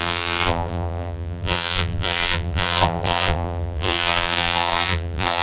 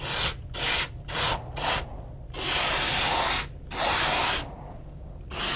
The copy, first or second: first